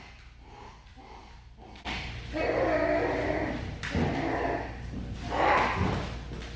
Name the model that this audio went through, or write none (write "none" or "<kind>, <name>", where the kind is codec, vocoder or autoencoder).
none